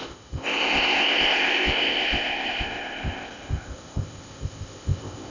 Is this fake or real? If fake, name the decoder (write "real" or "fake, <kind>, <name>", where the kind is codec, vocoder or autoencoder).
fake, codec, ZipCodec